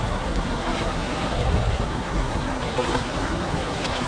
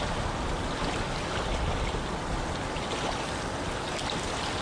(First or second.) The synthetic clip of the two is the first